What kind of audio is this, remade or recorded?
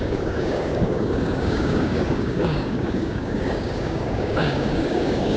remade